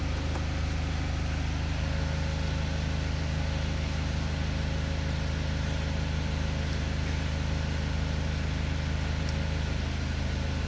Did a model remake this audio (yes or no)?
no